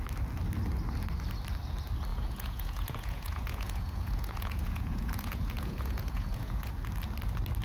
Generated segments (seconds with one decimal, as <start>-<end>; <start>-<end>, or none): 2.1-6.7